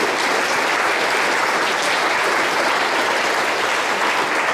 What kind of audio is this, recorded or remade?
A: recorded